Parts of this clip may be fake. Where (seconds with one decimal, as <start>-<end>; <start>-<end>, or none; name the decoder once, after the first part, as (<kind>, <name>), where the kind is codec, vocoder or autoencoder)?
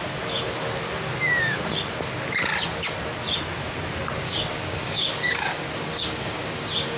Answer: 4.2-7.0 (codec, DAC)